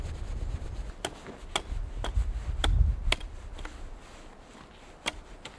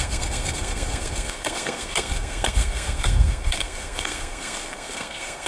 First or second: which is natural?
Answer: first